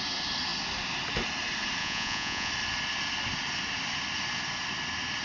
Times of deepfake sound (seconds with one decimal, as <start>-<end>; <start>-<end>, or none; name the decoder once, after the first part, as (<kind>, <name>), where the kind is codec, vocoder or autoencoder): 1.8-2.5 (vocoder, Vocos)

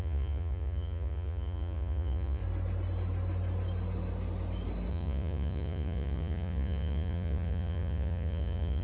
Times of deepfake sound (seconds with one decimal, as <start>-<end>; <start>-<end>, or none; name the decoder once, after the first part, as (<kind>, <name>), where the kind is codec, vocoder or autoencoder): 0.0-2.4 (vocoder, Vocos); 4.9-8.8

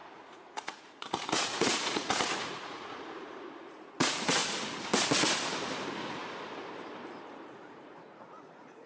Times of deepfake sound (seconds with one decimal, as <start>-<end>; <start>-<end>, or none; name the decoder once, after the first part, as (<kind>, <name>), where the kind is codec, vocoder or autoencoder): 0.0-4.4 (vocoder, Vocos); 7.4-8.9